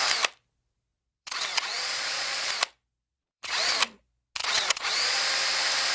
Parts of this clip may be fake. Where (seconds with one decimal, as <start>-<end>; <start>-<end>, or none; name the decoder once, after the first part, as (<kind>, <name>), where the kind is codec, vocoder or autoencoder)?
0.9-2.5 (vocoder, Vocos); 3.1-3.7; 4.4-5.2